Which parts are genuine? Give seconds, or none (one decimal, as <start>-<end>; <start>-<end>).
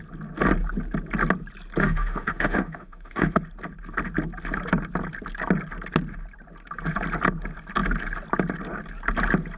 0.0-1.8; 3.4-9.6